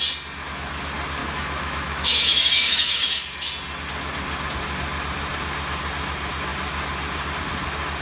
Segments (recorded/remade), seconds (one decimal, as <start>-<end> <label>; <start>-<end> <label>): 0.0-1.2 recorded; 1.2-3.5 remade; 3.5-8.0 recorded